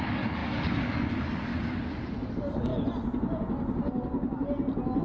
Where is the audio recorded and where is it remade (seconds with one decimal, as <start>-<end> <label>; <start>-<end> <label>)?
0.0-1.5 remade; 1.5-2.3 recorded; 2.3-2.7 remade; 2.7-5.0 recorded